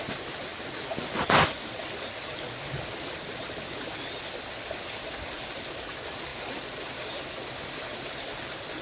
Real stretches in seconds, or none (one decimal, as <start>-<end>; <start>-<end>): 0.5-3.8; 6.3-7.3